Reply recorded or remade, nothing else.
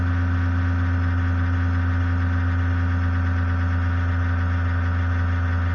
recorded